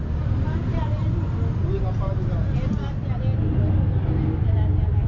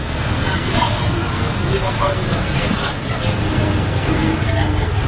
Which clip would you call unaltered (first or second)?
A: first